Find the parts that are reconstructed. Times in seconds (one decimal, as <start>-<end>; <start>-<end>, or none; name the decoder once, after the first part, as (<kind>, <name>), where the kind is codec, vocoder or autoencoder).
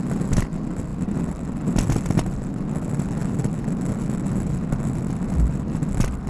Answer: none